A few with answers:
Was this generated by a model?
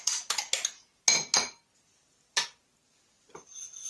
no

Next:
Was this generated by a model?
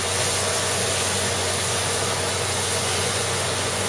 yes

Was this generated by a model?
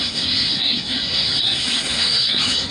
yes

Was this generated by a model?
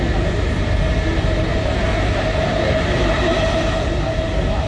yes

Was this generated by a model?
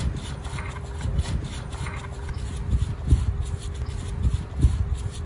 yes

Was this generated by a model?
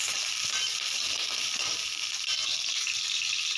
no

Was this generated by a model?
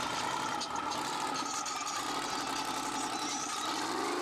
no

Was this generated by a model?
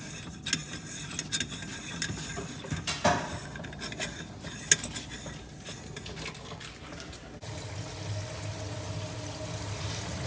no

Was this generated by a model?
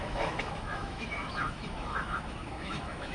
yes